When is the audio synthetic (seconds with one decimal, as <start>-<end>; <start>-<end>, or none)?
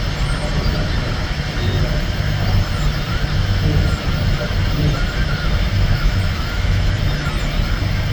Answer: 5.9-6.9